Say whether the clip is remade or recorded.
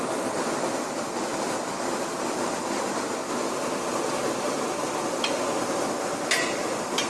recorded